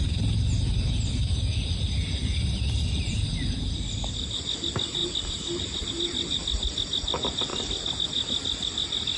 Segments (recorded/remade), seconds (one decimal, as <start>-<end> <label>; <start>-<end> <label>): 0.0-9.2 recorded